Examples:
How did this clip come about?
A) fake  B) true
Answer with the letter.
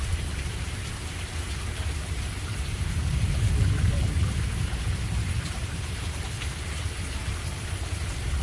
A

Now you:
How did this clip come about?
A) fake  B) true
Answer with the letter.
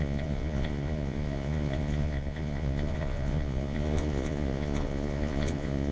A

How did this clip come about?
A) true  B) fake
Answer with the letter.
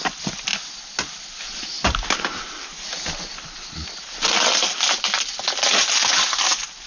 A